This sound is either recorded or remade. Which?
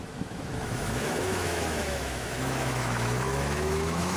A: remade